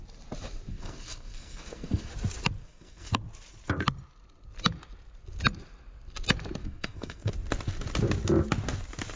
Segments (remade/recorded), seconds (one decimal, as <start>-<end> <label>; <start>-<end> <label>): 0.0-0.7 recorded; 0.7-2.1 remade; 2.1-2.6 recorded; 2.6-3.1 remade; 3.1-6.6 recorded; 6.6-7.3 remade; 7.3-9.2 recorded